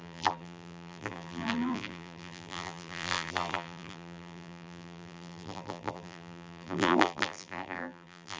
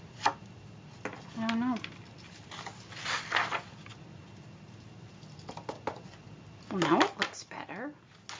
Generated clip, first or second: first